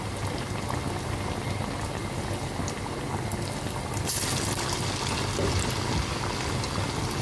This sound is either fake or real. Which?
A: real